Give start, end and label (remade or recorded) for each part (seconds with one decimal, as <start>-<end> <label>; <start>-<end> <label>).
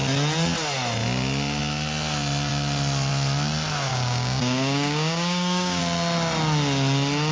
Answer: 0.0-3.9 recorded; 3.9-5.8 remade; 5.8-7.3 recorded